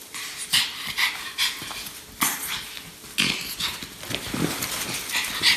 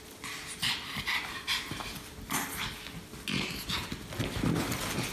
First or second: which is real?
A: second